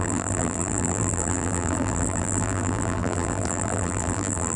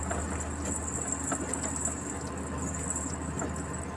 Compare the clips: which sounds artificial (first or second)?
first